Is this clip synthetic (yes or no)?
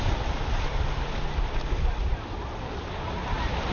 no